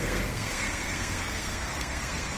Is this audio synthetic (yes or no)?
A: yes